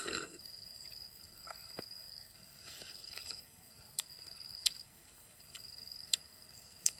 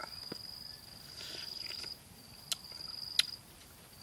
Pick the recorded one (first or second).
second